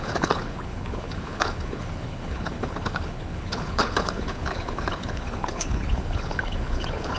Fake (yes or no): yes